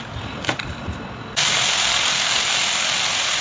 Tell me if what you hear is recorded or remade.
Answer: recorded